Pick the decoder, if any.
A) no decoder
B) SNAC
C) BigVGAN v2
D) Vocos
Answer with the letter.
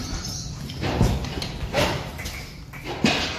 C